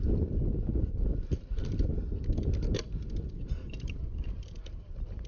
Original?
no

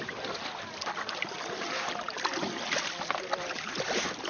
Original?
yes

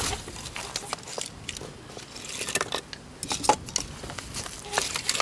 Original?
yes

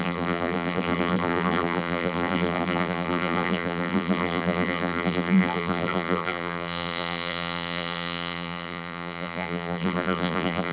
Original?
no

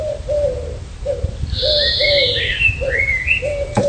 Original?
no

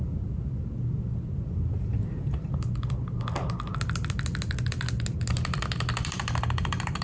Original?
yes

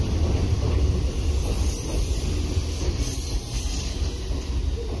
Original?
yes